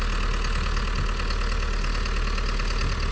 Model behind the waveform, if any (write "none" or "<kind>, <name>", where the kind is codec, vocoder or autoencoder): none